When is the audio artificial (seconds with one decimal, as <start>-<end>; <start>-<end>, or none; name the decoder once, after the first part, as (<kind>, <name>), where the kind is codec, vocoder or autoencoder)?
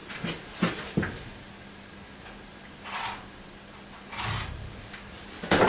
none